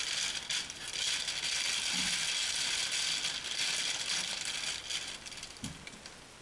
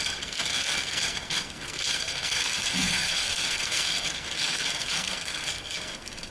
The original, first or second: first